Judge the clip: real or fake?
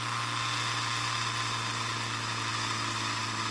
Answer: real